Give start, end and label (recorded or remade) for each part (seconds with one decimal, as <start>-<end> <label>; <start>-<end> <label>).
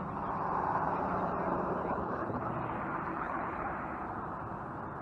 0.0-1.8 recorded; 1.8-2.5 remade; 2.5-3.1 recorded; 3.1-3.7 remade; 3.7-5.0 recorded